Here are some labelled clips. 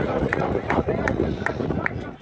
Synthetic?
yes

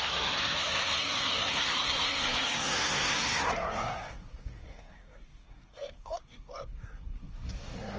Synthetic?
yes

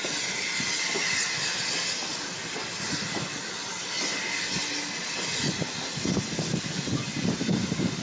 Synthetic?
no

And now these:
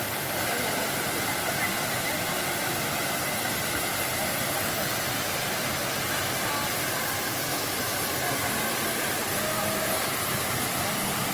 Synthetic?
no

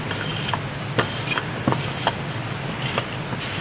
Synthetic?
yes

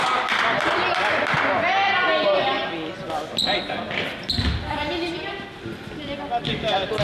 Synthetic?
no